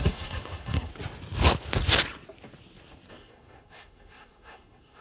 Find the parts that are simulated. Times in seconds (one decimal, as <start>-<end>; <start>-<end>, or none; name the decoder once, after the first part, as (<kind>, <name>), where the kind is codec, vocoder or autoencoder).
0.0-0.9 (codec, SNAC); 3.1-5.0